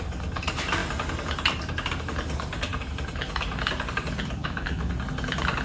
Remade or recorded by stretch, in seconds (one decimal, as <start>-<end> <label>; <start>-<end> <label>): 0.0-4.4 recorded; 4.4-4.9 remade; 4.9-5.6 recorded